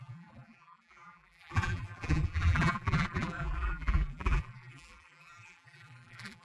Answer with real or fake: fake